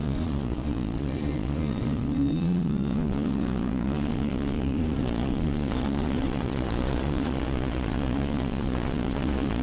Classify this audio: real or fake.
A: fake